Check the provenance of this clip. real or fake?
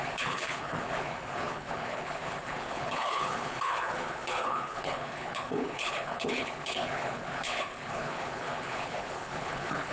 fake